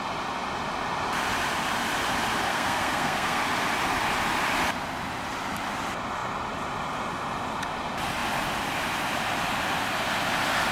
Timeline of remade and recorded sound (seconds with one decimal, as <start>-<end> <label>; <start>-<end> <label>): 0.0-2.5 recorded; 2.5-3.4 remade; 3.4-10.7 recorded